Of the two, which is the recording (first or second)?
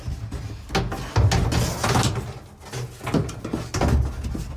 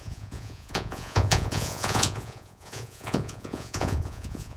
first